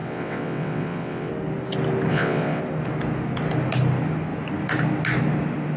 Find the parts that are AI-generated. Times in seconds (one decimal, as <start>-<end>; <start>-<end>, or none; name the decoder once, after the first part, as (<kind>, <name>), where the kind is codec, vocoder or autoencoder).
0.0-1.3 (vocoder, WaveNeXt); 2.1-2.6